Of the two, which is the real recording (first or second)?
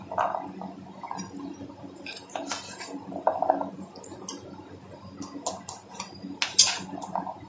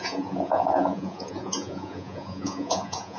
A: first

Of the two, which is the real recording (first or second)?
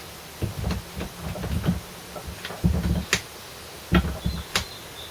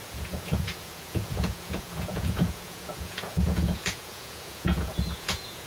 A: first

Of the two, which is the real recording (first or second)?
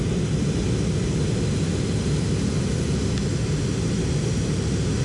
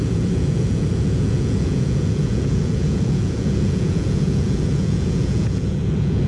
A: first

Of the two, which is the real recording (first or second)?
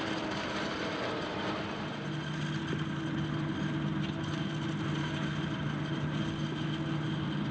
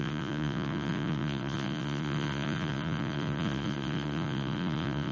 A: first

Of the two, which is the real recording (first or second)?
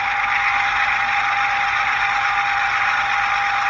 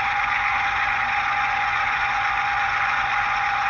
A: first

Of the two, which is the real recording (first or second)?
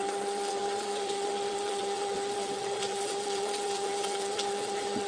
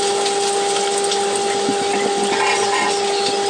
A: second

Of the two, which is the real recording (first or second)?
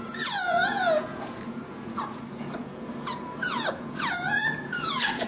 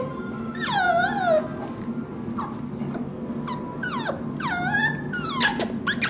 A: second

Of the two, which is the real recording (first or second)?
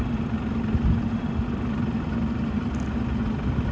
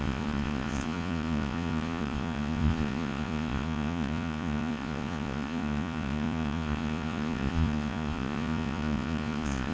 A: first